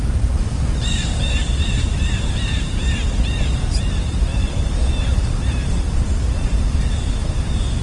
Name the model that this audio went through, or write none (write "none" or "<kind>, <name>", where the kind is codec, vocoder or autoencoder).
vocoder, BigVGAN v2